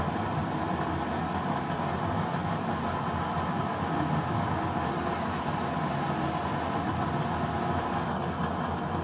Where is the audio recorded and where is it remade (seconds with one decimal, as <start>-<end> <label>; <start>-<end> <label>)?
0.0-9.0 recorded